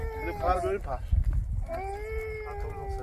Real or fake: real